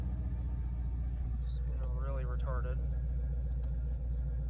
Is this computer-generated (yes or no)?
no